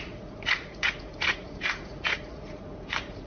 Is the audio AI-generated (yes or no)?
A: yes